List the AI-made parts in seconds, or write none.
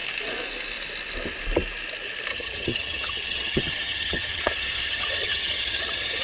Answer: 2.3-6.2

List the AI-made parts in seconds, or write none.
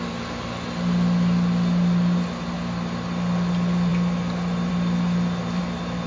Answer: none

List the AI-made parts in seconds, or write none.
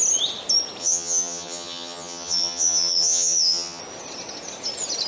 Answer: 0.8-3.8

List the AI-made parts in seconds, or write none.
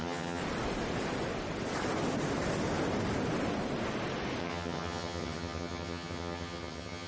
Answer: 0.0-0.4; 4.4-7.1